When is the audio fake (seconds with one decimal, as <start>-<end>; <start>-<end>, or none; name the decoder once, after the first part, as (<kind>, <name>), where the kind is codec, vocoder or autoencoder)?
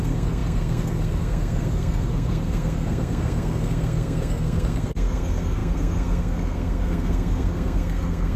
0.0-8.4 (codec, SNAC)